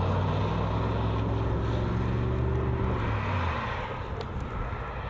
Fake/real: real